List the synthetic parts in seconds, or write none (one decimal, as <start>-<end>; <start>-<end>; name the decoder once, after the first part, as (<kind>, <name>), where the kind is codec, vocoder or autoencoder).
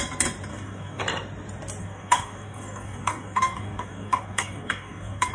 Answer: 0.5-1.0 (codec, DAC); 1.8-5.3